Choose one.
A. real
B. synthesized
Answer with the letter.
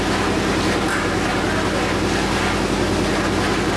A